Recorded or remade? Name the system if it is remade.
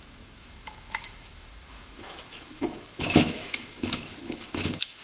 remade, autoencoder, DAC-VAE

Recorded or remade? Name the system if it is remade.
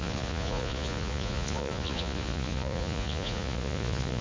remade, vocoder, Vocos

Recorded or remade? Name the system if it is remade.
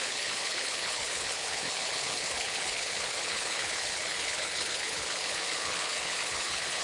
remade, codec, HILCodec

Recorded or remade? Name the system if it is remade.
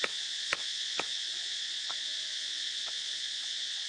remade, vocoder, Vocos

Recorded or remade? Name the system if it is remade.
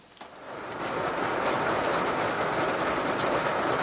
recorded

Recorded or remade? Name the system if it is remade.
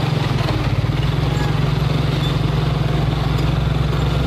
recorded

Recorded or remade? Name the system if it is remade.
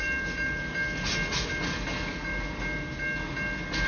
recorded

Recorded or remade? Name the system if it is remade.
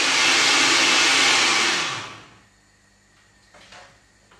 recorded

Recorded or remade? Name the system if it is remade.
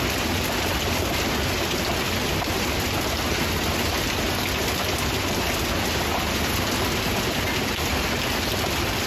recorded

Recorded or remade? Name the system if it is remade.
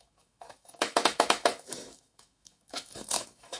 remade, autoencoder, DAC-VAE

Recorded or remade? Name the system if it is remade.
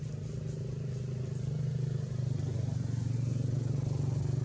recorded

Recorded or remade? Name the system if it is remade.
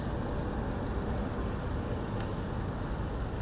recorded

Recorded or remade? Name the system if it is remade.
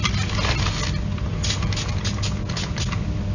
recorded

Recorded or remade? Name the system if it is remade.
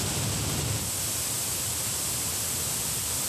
recorded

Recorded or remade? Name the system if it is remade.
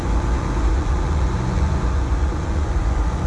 remade, vocoder, Vocos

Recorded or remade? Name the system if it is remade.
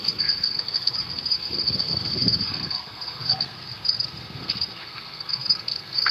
remade, codec, SNAC